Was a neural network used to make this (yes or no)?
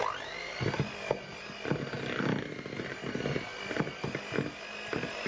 no